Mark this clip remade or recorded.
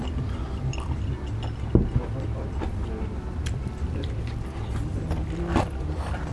recorded